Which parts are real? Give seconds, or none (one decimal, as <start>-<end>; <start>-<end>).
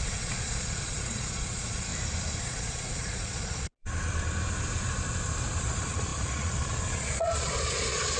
1.9-2.4; 3.7-5.6